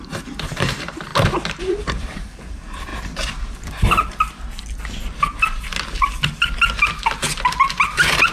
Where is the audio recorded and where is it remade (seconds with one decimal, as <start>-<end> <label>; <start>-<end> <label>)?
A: 0.0-1.1 remade; 1.1-1.6 recorded; 1.6-2.9 remade; 2.9-7.6 recorded; 7.6-8.3 remade